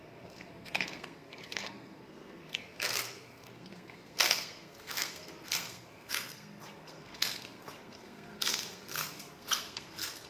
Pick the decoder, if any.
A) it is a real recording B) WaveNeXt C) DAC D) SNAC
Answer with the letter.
D